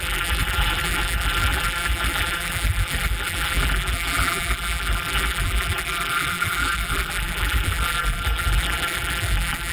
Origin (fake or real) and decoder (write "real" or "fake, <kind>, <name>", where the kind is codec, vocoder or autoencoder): fake, vocoder, BigVGAN v2